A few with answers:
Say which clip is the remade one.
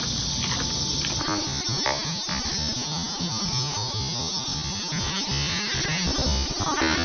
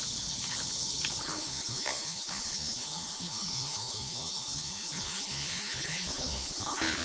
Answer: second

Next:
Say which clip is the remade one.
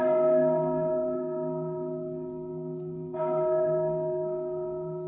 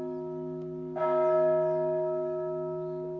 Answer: first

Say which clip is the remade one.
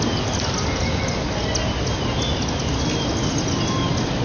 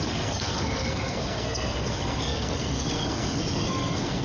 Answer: second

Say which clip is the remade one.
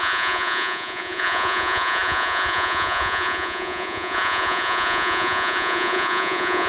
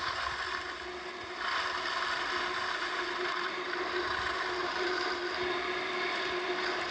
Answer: first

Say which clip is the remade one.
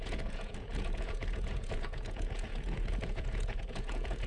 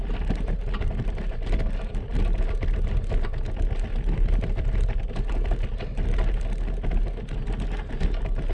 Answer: first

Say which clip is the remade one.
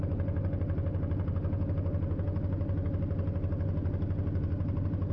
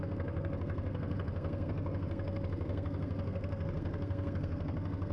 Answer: second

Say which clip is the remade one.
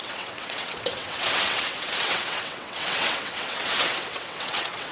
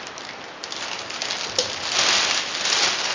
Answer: first